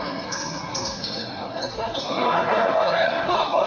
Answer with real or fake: fake